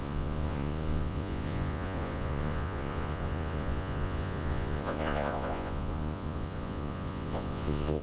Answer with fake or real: fake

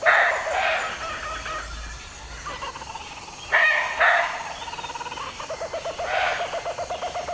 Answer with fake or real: real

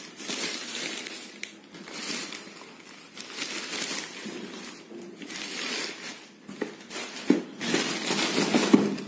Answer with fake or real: real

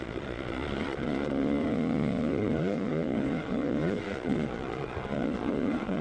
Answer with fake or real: fake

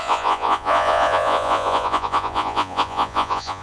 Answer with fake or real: fake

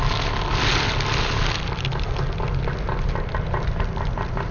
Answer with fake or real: real